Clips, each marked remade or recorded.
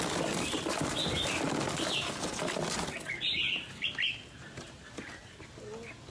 recorded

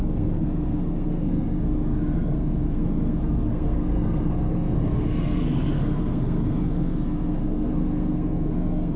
remade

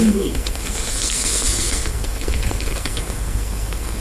remade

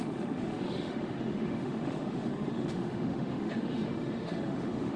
remade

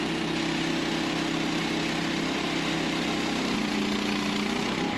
recorded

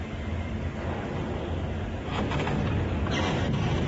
recorded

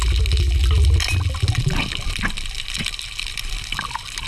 recorded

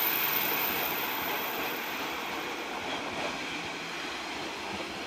recorded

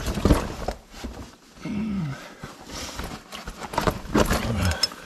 recorded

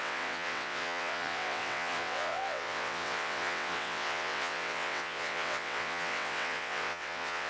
remade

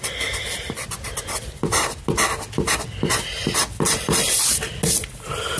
recorded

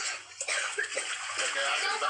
remade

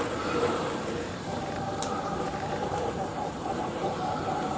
remade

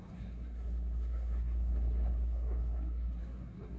remade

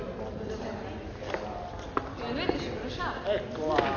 recorded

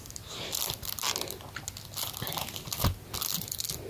recorded